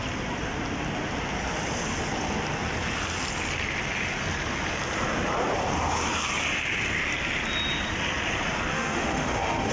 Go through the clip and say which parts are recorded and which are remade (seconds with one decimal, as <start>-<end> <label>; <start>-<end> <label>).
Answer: 0.0-8.7 recorded; 8.7-9.7 remade